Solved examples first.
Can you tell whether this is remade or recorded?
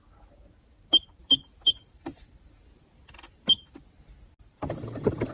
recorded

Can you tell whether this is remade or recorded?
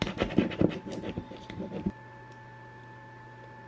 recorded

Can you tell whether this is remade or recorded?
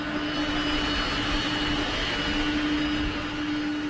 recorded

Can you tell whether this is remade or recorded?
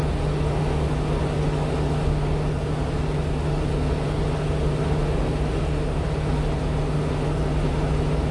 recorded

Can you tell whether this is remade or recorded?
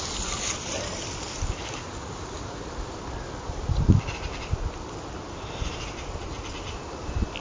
recorded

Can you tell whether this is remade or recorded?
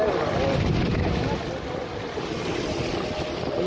recorded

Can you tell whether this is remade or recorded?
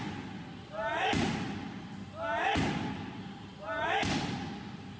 recorded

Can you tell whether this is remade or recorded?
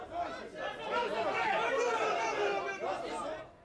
recorded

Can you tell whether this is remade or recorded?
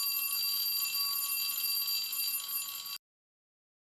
recorded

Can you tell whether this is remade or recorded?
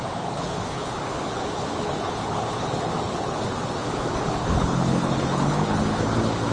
remade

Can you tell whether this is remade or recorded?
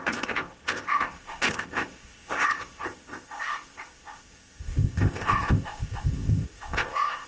remade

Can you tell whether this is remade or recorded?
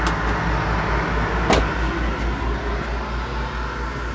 recorded